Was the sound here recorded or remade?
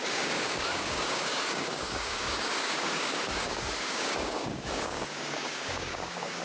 remade